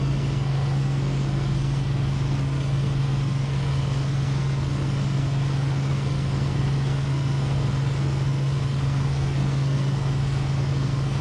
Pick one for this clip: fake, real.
fake